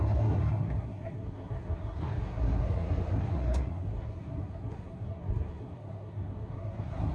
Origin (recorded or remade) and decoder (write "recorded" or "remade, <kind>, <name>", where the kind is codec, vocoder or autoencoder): remade, codec, SNAC